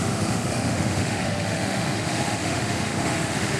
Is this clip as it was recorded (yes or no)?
no